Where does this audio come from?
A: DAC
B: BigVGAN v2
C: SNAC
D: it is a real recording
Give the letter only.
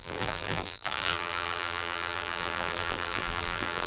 B